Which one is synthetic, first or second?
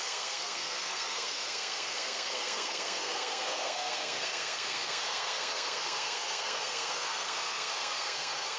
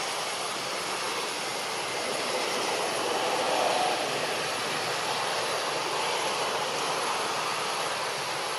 first